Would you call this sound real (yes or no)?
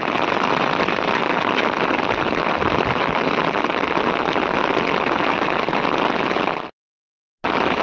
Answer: yes